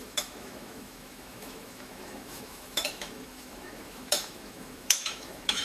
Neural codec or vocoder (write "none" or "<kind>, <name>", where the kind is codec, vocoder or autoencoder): autoencoder, DAC-VAE